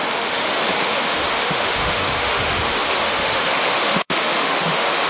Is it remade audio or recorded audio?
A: remade